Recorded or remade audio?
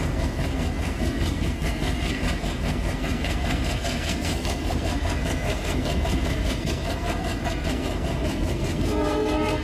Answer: remade